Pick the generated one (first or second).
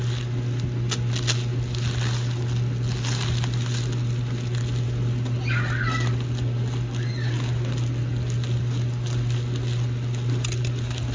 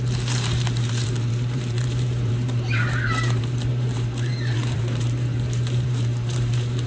second